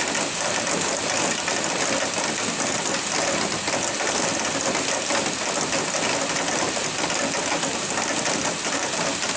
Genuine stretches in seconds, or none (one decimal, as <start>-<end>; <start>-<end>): 0.0-9.4